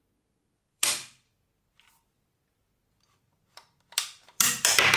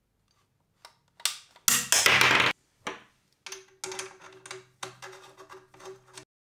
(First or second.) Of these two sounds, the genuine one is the second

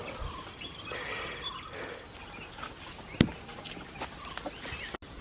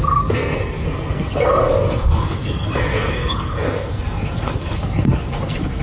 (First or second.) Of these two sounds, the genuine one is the first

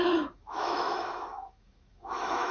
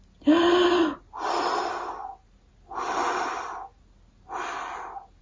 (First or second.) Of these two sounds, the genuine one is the second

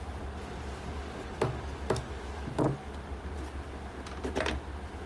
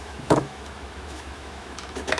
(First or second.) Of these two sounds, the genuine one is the first